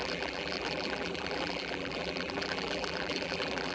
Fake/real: fake